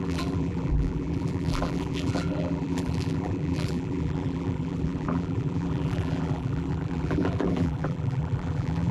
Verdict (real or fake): fake